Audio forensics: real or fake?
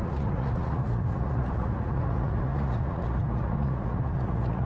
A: fake